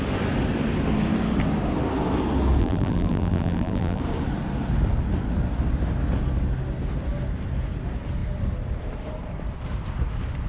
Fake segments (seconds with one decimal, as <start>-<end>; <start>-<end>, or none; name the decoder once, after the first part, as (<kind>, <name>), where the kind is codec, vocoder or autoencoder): 2.6-4.0 (vocoder, BigVGAN v2)